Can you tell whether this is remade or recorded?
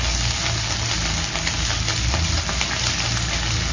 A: recorded